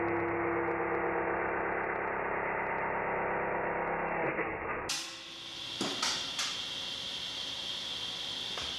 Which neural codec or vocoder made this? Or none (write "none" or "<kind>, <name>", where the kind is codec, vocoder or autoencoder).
none